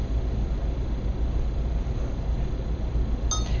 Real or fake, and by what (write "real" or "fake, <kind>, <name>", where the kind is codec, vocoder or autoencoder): real